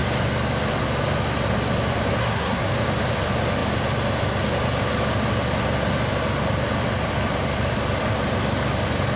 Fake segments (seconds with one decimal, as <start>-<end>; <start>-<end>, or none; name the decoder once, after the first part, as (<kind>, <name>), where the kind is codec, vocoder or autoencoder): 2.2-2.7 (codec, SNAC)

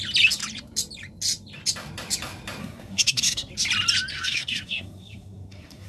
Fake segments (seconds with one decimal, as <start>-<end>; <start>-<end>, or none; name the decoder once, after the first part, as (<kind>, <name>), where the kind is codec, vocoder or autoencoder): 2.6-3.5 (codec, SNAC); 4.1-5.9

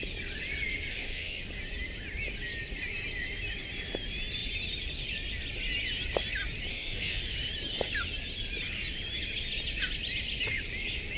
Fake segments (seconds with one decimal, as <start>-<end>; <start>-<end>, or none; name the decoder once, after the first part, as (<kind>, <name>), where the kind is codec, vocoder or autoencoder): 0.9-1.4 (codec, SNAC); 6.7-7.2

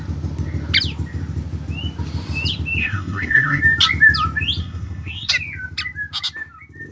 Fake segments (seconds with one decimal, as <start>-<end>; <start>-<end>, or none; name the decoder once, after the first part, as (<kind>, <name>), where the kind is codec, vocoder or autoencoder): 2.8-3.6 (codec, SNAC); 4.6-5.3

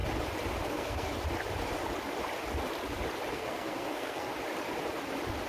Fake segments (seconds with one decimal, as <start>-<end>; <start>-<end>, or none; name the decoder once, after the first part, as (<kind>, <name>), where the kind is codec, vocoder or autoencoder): 0.7-1.1 (codec, SNAC); 3.3-4.3

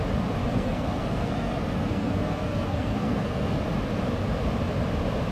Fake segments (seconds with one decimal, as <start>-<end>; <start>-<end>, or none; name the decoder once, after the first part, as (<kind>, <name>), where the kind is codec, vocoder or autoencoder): 0.4-3.6 (codec, SNAC)

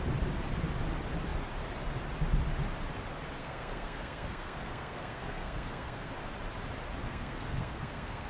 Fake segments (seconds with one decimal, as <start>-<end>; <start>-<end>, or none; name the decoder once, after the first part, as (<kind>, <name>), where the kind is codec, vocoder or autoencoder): 3.4-6.1 (codec, SNAC); 7.0-8.3

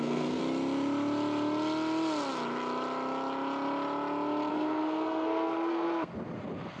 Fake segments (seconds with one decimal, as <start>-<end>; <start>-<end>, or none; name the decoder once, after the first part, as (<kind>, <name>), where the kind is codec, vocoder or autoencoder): 0.0-0.4 (codec, SNAC); 4.5-6.1